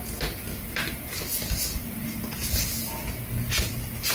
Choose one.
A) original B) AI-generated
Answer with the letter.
A